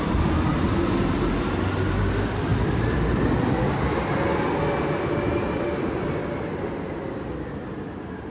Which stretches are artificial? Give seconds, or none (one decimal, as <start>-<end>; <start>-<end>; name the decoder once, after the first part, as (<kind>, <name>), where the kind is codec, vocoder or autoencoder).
none